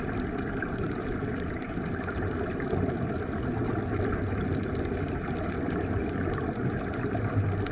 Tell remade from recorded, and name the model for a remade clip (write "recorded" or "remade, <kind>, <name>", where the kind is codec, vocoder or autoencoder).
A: recorded